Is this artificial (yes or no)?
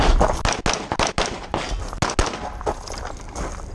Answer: no